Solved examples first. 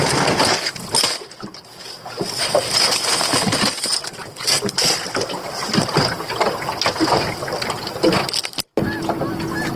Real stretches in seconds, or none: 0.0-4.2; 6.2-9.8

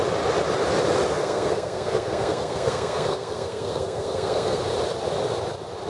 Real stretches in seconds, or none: 0.0-1.1; 4.6-5.9

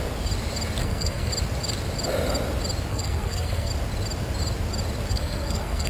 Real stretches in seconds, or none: 0.0-0.8; 1.3-2.9; 3.7-5.1

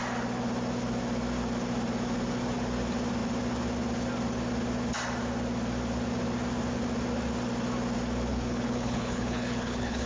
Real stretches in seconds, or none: 0.0-8.3

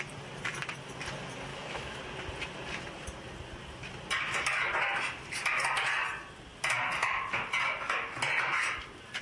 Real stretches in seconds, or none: 0.0-1.5; 2.0-9.2

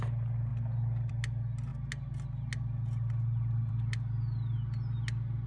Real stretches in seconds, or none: 0.0-5.5

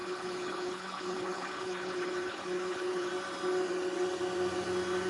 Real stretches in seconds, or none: 3.1-5.1

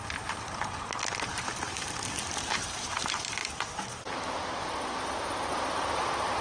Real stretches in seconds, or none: 0.0-1.0; 3.4-5.5